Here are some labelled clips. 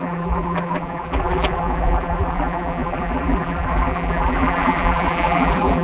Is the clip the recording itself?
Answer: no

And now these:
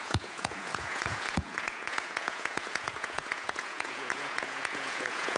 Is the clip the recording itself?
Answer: no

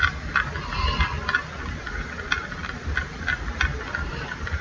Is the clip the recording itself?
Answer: yes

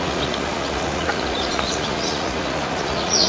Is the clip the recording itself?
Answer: no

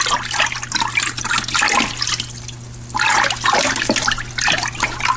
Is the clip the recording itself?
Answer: yes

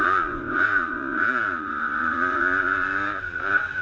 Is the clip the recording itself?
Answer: no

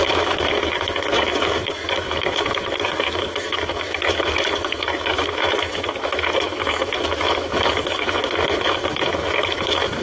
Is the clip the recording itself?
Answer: no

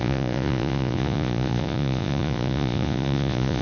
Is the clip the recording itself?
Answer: no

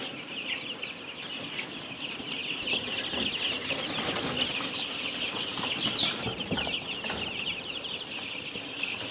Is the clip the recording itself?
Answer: yes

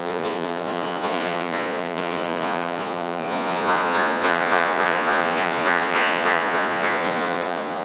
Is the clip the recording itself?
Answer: no